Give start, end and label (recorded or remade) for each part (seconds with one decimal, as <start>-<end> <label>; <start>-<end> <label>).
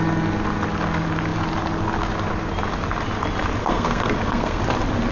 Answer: 0.0-3.6 recorded; 3.6-4.6 remade; 4.6-5.1 recorded